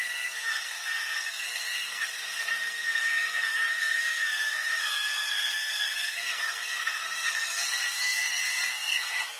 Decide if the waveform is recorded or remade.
remade